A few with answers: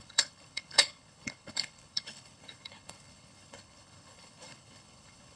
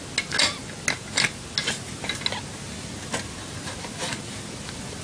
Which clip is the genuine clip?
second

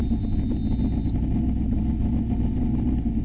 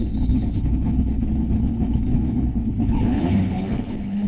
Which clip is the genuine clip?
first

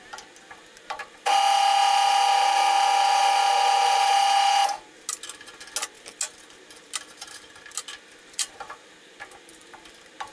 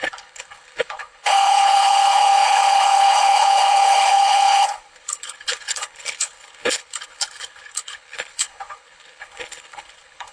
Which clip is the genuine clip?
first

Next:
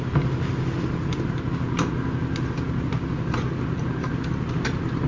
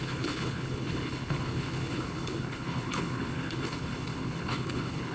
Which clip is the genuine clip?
first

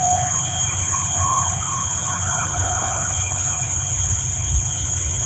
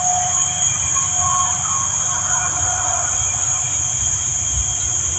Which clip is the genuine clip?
second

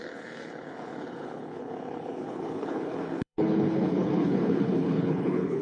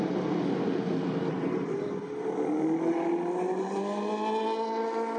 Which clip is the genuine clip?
second